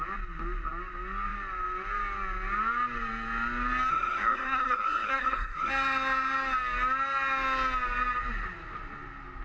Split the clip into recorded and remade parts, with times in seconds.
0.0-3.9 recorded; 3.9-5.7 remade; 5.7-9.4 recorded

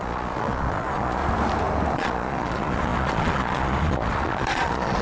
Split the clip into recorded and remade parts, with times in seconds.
0.0-1.2 remade; 1.2-1.9 recorded; 1.9-5.0 remade

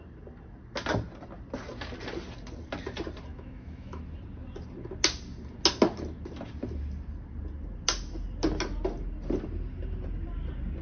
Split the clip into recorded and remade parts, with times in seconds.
0.0-3.3 recorded; 3.3-4.0 remade; 4.0-10.8 recorded